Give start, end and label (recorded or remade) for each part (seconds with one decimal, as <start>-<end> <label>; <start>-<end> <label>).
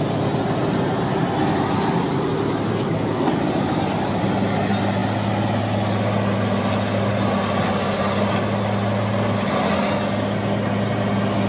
0.0-11.5 recorded